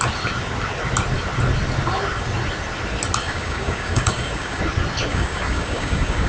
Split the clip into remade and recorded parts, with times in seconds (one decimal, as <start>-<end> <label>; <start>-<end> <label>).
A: 0.0-3.2 recorded; 3.2-4.6 remade; 4.6-5.1 recorded; 5.1-6.3 remade